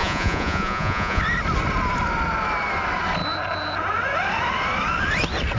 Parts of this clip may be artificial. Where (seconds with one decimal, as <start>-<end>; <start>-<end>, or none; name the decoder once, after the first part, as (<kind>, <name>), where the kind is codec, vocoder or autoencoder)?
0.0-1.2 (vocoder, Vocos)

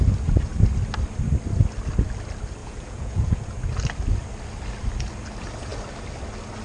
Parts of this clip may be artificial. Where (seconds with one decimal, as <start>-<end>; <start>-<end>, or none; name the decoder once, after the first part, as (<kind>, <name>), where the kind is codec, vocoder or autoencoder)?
2.6-3.6 (vocoder, Vocos)

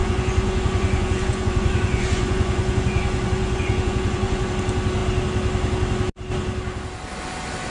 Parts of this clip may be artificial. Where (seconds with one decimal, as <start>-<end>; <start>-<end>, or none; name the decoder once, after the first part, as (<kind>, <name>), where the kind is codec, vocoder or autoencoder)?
0.0-4.5 (vocoder, Vocos)

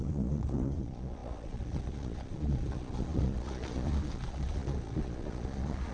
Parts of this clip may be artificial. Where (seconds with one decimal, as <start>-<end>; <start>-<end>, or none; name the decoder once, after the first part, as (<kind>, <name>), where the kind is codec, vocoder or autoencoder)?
0.0-5.9 (vocoder, Vocos)

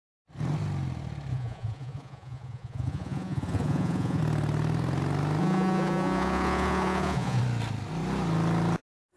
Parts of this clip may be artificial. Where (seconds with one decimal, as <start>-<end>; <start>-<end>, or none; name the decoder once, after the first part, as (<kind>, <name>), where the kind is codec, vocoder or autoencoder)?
1.3-4.2 (vocoder, Vocos); 5.4-7.4

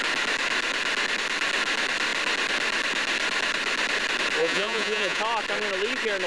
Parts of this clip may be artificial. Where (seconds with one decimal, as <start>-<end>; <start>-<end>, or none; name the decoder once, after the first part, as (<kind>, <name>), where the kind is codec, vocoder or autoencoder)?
4.4-5.2 (vocoder, Vocos)